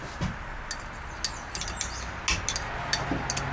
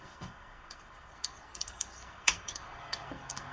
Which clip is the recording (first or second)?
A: first